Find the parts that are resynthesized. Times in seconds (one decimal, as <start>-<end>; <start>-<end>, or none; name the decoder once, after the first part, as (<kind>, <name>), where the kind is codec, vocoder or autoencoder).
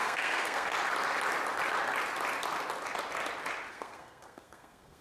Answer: 0.0-0.7 (codec, SNAC); 3.7-5.0